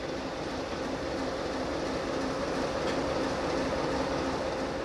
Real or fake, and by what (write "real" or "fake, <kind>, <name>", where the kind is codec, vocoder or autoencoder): real